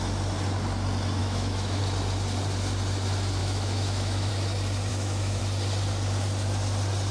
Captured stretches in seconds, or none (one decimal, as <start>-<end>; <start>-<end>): 0.0-1.2; 1.8-3.4; 4.3-4.9; 5.4-7.1